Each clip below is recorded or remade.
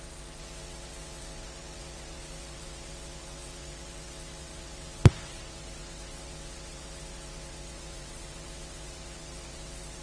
remade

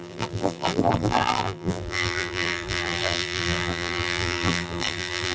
remade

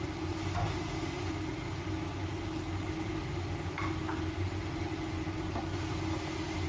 recorded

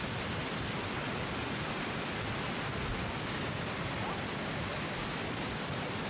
recorded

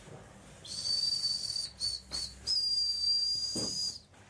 recorded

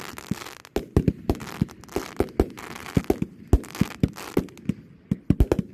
recorded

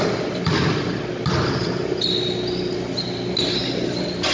recorded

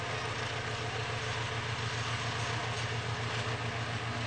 recorded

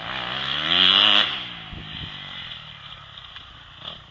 recorded